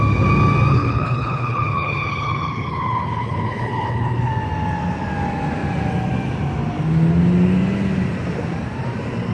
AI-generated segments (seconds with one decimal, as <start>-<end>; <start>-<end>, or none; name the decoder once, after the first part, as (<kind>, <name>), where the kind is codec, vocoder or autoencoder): 0.7-4.3 (codec, HILCodec)